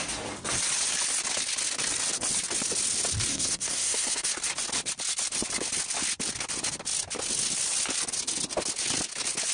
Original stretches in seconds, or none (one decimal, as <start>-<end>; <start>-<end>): 0.0-3.3; 4.3-9.5